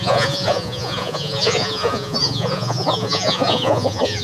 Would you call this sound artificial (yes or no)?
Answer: yes